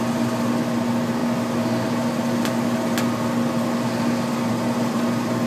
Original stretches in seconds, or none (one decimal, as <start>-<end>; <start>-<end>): 0.0-5.5